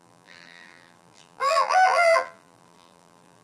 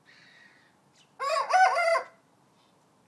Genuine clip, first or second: second